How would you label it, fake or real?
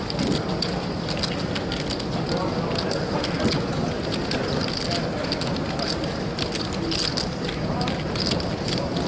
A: real